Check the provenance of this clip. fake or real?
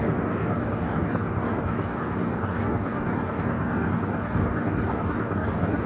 fake